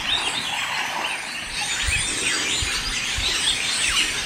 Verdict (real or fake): real